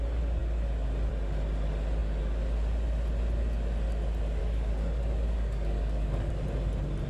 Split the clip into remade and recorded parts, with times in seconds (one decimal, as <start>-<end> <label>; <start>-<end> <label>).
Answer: 0.0-4.4 recorded; 4.4-6.3 remade; 6.3-7.1 recorded